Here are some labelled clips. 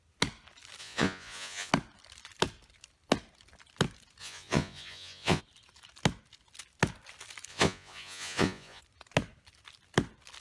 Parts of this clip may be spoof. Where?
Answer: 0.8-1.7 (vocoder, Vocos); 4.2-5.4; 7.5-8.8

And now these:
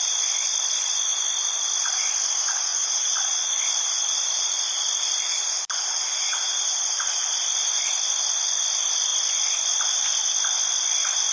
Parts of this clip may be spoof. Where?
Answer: 2.7-3.5 (vocoder, Vocos)

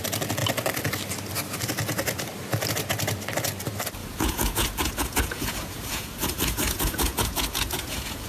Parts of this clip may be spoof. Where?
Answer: 4.0-8.3 (vocoder, Vocos)

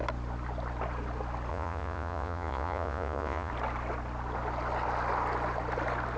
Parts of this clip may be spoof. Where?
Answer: 1.5-3.5 (vocoder, Vocos)

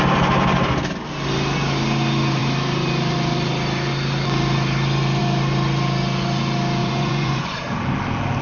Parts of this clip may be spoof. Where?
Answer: 6.8-7.6 (vocoder, Vocos)

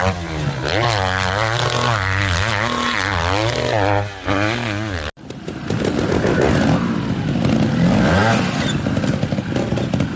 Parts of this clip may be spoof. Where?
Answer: none

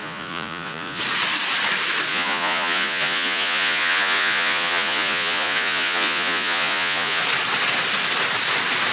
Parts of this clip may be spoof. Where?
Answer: 0.0-1.0 (vocoder, Vocos); 2.1-7.2

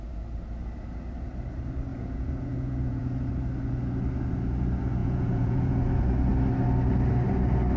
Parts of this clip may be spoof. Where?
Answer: 1.9-3.3 (vocoder, Vocos); 5.0-5.7